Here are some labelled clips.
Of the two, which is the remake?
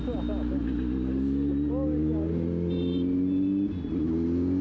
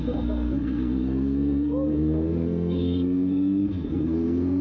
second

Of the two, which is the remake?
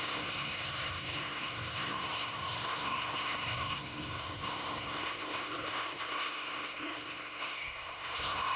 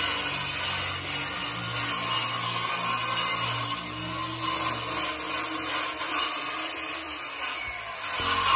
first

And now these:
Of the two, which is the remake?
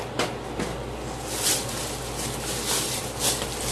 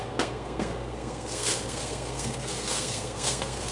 second